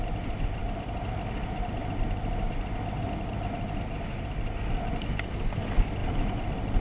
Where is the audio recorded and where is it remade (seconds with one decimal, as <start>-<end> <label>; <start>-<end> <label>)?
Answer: 0.0-6.8 recorded

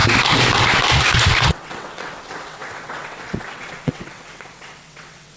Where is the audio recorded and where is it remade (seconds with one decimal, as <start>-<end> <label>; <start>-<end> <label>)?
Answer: 0.0-1.4 recorded; 1.4-5.4 remade

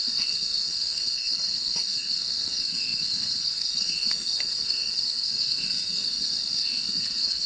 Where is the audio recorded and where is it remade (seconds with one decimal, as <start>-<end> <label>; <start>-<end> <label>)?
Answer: 0.0-7.5 remade

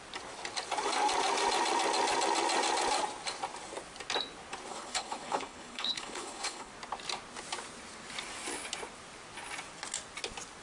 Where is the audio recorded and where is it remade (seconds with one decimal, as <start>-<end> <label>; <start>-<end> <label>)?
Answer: 0.0-4.7 recorded; 4.7-6.7 remade; 6.7-10.6 recorded

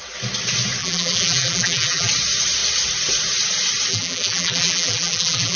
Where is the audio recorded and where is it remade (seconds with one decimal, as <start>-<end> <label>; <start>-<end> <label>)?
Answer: 0.0-0.8 recorded; 0.8-2.1 remade; 2.1-3.9 recorded; 3.9-5.6 remade